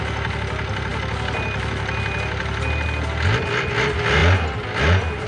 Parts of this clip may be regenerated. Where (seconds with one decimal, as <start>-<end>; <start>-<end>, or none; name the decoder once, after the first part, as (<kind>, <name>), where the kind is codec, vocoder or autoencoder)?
none